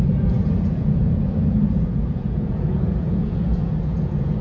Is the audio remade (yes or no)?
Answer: yes